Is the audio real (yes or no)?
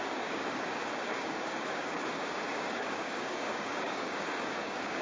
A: no